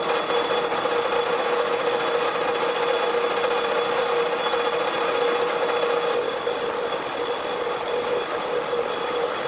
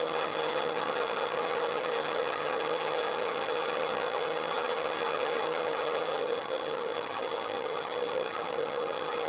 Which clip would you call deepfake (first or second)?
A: second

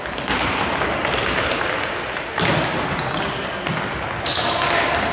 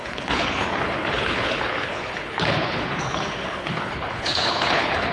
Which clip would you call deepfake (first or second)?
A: second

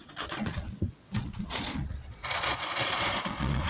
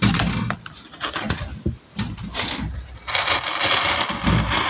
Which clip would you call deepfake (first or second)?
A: first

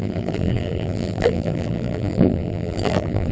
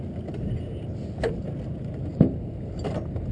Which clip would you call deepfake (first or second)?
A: first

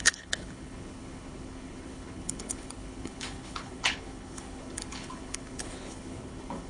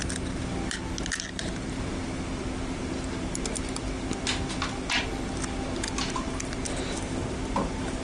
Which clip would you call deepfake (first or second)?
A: first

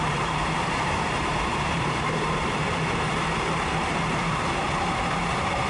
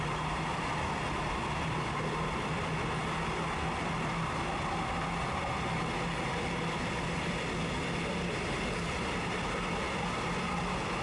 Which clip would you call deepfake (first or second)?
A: first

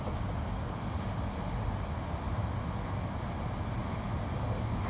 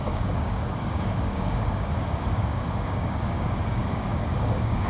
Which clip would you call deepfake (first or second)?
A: second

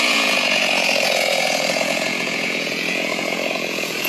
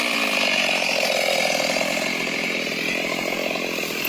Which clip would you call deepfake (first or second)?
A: first